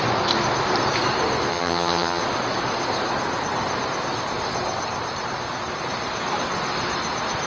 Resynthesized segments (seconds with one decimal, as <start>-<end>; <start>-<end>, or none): 1.5-2.2

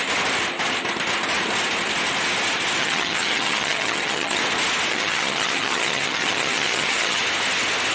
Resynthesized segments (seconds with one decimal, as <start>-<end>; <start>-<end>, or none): 2.8-4.4; 4.9-7.2